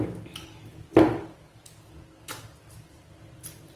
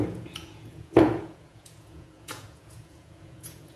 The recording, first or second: first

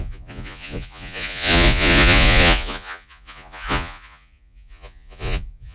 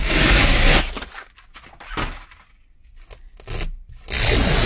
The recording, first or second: second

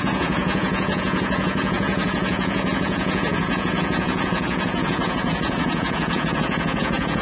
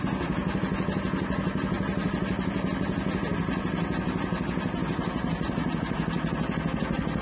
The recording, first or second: second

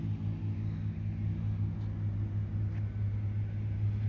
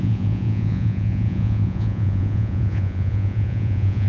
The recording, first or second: first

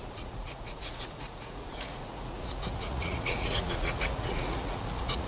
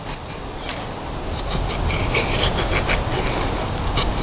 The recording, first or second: second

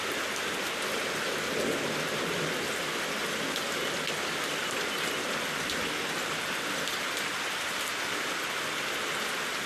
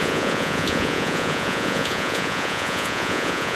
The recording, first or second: first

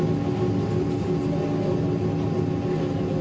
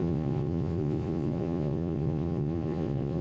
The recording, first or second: first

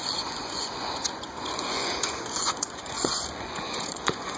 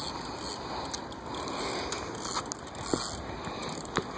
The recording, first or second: second